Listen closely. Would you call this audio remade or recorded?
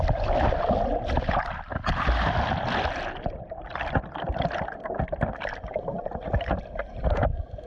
recorded